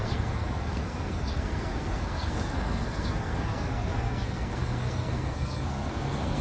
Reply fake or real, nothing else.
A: fake